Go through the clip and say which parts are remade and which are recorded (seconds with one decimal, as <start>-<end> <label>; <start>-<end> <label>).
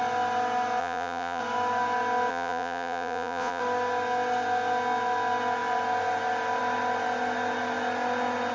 0.0-0.8 recorded; 0.8-1.4 remade; 1.4-2.3 recorded; 2.3-3.6 remade; 3.6-8.5 recorded